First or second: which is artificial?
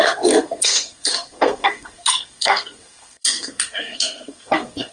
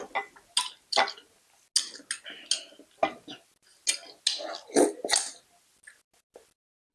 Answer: first